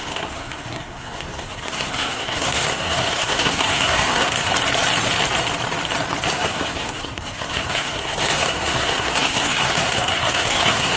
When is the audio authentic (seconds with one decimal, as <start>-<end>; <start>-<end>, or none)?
4.5-6.3